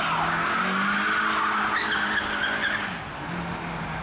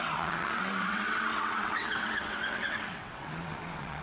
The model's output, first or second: second